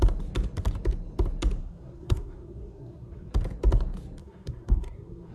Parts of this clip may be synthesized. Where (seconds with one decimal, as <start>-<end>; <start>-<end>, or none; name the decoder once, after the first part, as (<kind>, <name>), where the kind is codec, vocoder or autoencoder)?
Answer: 1.6-3.3 (codec, SNAC); 4.2-5.3

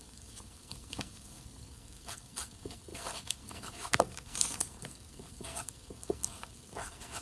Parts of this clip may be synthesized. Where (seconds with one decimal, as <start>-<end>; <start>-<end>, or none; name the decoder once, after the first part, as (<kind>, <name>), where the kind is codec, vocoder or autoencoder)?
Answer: 0.0-7.2 (codec, SNAC)

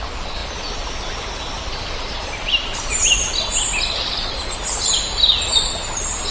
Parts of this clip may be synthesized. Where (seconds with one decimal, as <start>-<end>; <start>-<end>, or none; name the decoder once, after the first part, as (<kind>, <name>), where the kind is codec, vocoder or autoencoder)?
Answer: none

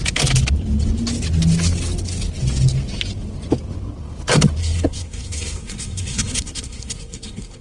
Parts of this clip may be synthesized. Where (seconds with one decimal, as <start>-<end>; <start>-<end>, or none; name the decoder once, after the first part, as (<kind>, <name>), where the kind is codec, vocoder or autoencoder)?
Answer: 4.6-7.6 (codec, SNAC)

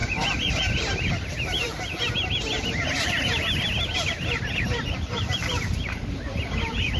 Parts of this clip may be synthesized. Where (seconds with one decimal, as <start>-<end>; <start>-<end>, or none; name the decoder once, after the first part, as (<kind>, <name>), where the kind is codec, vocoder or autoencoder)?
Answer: 0.0-7.0 (vocoder, BigVGAN v2)